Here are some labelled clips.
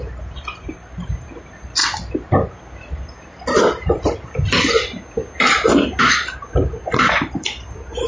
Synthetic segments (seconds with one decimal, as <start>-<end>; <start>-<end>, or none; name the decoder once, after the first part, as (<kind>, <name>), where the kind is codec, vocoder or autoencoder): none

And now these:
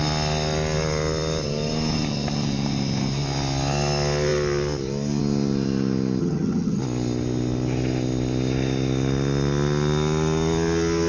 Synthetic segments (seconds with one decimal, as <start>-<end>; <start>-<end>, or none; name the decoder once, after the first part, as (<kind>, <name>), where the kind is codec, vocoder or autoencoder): 6.2-6.8 (vocoder, HiFi-GAN)

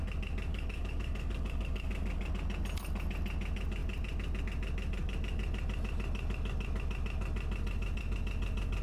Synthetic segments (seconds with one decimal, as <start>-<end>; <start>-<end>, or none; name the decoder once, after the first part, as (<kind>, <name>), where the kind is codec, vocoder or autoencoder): 0.5-2.3 (codec, DAC)

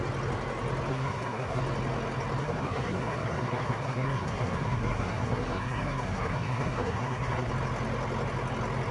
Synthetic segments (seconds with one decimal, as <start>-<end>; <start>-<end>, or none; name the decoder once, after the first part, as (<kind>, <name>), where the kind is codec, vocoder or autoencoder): 0.9-1.6 (codec, SNAC); 2.4-7.5

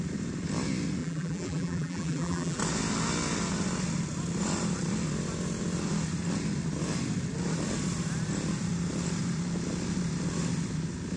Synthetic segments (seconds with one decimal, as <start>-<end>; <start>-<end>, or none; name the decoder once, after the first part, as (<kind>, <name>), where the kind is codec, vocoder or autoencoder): 1.0-2.6 (vocoder, BigVGAN v2)

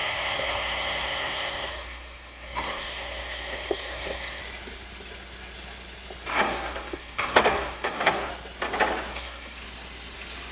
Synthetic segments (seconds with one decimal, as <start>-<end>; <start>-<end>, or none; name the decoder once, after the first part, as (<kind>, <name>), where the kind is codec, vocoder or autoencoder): 0.0-4.4 (codec, SNAC); 6.3-8.3; 9.1-9.6

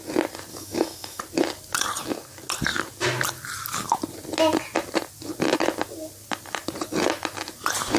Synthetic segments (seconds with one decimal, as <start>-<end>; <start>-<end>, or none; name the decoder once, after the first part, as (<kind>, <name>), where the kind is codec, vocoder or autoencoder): 0.5-1.2 (autoencoder, DAC-VAE)

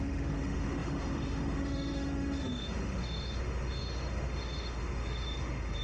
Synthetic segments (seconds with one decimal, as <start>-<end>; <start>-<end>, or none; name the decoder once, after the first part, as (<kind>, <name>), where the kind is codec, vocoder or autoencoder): 0.0-5.8 (autoencoder, DAC-VAE)